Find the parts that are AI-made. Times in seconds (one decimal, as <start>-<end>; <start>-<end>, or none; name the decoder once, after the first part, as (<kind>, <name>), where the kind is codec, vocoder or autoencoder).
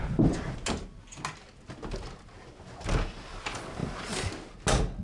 none